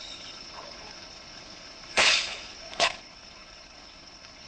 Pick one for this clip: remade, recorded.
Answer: remade